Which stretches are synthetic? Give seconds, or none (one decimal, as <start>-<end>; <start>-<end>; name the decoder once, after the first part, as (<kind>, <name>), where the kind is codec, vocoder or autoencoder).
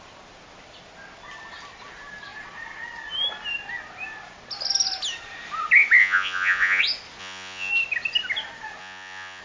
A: 6.0-6.8 (vocoder, Vocos); 7.2-7.7; 8.8-9.4